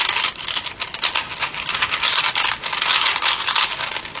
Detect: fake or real real